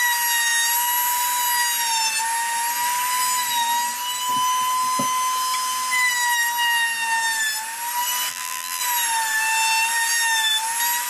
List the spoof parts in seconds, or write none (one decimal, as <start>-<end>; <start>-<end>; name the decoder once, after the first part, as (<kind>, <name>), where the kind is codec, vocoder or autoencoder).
8.3-8.8 (vocoder, BigVGAN v2)